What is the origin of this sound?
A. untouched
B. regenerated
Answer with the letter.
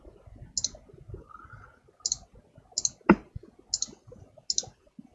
A